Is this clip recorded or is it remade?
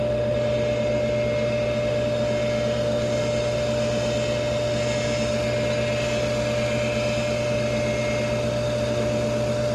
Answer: recorded